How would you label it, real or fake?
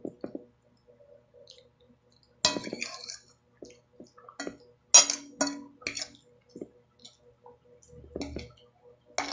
real